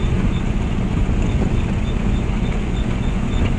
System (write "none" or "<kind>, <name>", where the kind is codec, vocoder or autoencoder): vocoder, Vocos